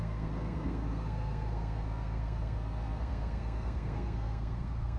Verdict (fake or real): fake